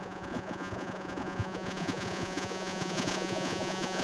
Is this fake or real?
fake